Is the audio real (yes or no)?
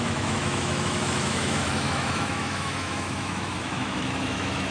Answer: no